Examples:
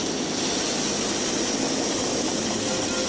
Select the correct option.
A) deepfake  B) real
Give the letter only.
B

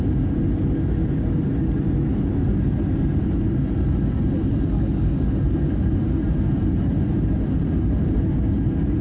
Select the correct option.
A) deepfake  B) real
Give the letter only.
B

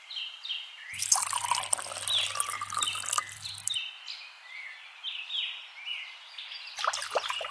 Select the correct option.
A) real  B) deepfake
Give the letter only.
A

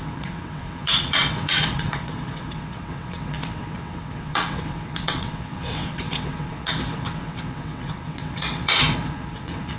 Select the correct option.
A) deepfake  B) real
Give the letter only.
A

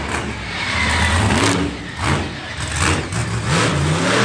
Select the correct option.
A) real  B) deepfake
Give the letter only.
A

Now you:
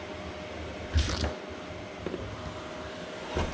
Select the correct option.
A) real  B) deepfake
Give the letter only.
A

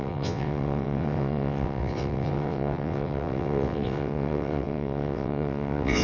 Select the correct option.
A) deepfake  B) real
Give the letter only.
A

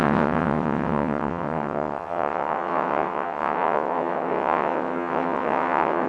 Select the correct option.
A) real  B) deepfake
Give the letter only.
B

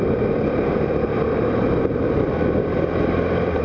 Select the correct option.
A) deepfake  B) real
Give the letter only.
B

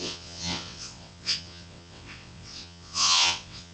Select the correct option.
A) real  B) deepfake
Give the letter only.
B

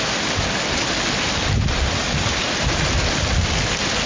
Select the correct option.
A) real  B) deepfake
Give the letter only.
A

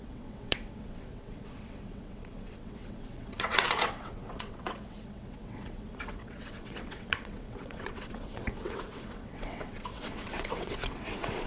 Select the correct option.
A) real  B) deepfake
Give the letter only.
B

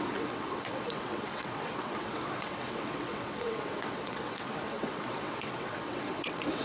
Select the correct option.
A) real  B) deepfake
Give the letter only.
B